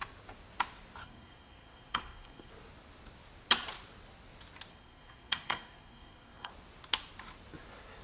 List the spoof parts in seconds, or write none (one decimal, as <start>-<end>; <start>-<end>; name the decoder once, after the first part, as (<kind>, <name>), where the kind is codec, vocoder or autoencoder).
1.0-2.5 (codec, SNAC); 4.7-6.5